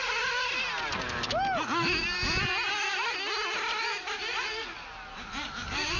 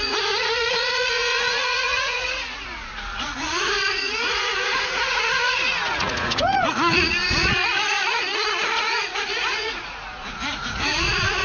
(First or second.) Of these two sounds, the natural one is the first